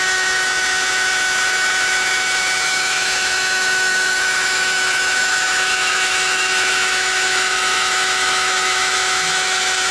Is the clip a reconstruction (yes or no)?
yes